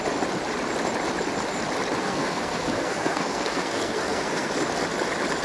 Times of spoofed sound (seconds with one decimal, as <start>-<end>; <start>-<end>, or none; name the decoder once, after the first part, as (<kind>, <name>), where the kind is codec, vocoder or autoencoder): 2.0-4.5 (codec, SNAC)